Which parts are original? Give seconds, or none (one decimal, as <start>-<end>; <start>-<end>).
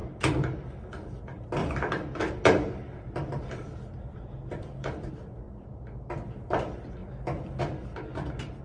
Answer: 1.2-1.6; 5.1-8.6